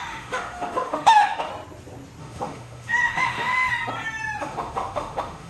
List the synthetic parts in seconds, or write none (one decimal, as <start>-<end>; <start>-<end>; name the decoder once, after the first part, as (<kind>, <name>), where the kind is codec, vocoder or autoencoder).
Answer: 0.0-1.5 (autoencoder, DAC-VAE); 2.2-3.7; 4.4-5.5